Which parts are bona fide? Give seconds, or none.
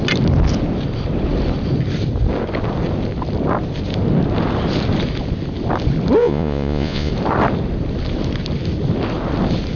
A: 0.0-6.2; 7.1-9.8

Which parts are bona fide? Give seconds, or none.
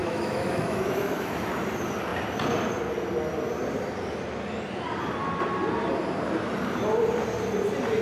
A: 1.5-8.0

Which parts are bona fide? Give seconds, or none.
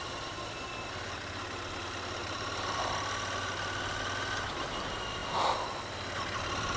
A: 0.0-2.2; 2.8-6.8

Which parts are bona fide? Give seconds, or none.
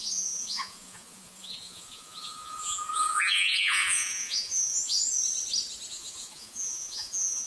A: 5.0-5.9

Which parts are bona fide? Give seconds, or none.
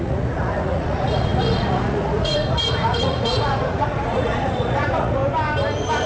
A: 5.2-6.1